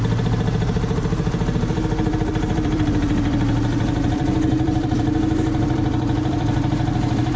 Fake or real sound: fake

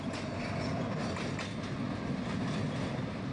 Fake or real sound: real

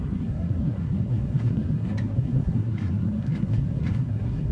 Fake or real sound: fake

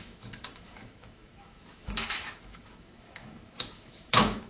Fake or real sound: fake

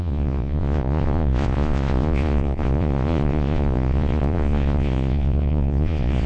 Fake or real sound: fake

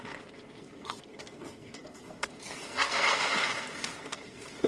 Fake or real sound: fake